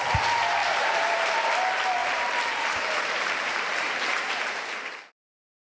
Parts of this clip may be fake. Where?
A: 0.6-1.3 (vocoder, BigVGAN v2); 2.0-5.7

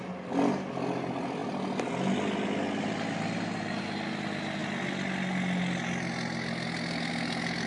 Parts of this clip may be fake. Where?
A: none

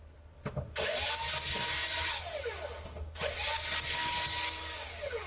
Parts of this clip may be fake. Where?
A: 1.8-2.8 (vocoder, BigVGAN v2)

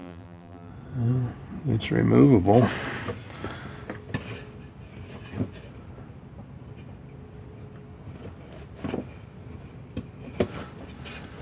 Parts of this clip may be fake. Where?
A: 0.0-0.7 (vocoder, BigVGAN v2)

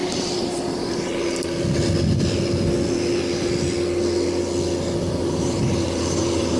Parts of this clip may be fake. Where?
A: 0.0-1.1 (vocoder, BigVGAN v2); 5.1-6.6